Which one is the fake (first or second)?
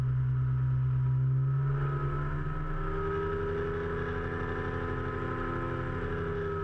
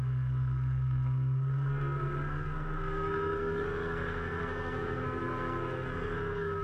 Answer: second